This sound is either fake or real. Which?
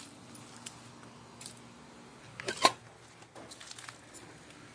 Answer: real